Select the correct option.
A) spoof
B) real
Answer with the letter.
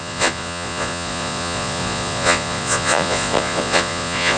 A